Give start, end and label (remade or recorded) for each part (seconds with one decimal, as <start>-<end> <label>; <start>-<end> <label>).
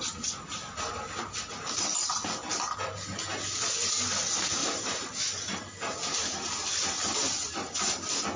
0.0-4.6 recorded; 4.6-5.2 remade; 5.2-8.4 recorded